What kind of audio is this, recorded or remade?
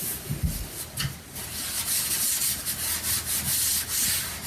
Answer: recorded